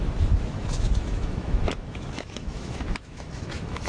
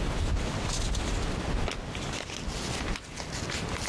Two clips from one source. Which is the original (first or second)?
second